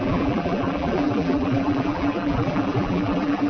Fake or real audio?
fake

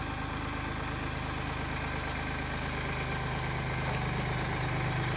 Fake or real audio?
real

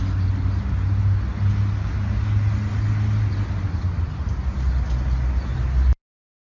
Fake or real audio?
real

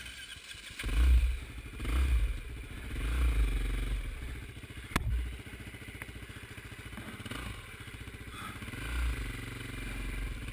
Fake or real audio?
real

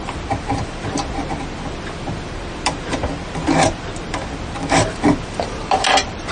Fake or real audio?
fake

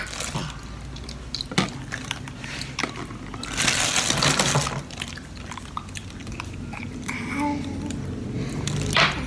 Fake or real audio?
real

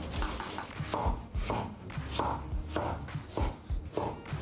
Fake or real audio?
real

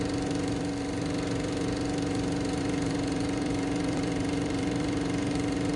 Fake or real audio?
fake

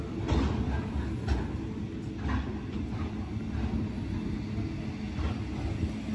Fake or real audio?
real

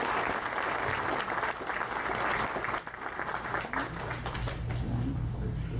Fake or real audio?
real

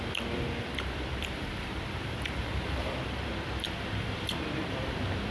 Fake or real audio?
fake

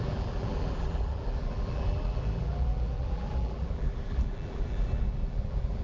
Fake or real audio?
fake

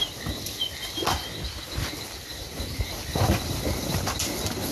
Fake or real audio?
real